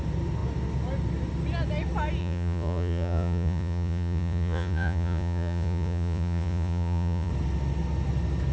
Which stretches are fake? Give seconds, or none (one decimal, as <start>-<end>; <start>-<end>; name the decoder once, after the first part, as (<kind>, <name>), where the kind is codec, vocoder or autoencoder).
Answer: 2.2-7.3 (vocoder, Vocos)